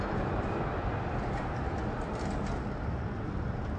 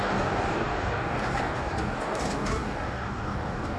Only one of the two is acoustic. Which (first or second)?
first